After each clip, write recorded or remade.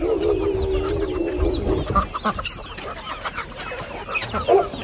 recorded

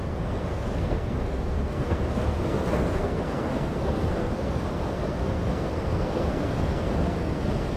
remade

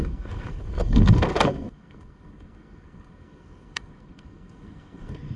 remade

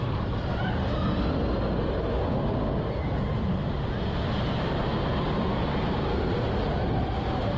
recorded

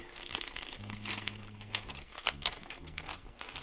remade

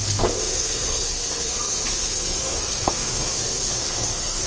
remade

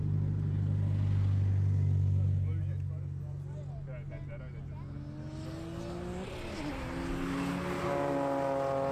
recorded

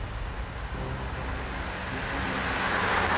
recorded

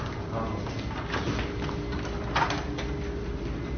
recorded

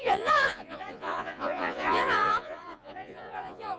remade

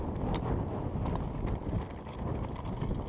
recorded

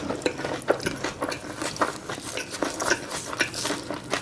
recorded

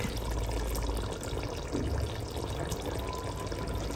recorded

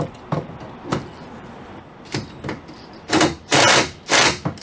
remade